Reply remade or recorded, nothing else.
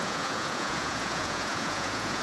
remade